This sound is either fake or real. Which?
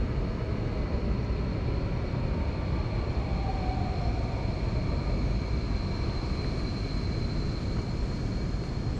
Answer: real